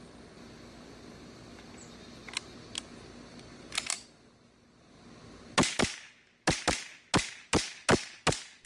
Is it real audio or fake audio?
real